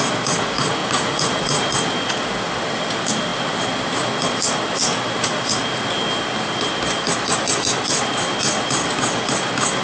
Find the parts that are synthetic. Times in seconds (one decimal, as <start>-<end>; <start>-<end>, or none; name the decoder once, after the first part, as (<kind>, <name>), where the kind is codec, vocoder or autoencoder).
0.8-1.7 (vocoder, Vocos)